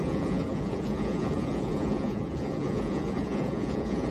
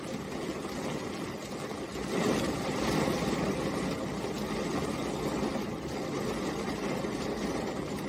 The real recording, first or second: second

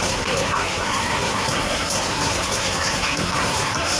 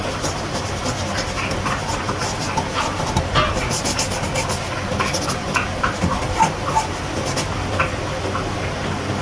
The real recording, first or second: second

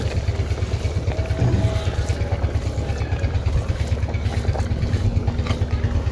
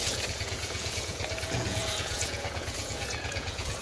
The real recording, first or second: first